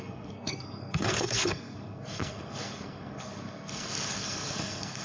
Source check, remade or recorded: remade